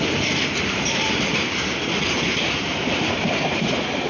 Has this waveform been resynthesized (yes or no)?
yes